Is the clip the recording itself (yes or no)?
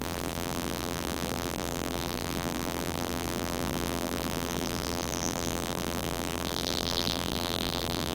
no